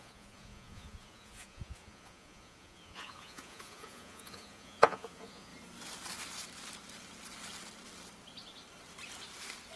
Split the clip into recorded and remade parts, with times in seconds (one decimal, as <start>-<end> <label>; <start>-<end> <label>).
0.0-5.5 remade; 5.5-9.8 recorded